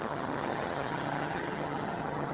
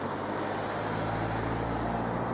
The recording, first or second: second